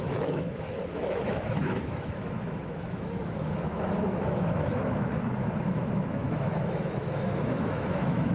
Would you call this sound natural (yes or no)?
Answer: no